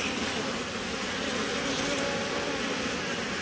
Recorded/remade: recorded